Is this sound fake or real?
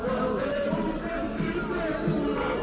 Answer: real